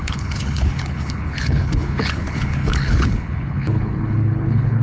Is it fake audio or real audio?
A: fake